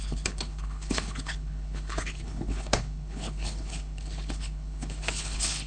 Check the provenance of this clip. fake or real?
fake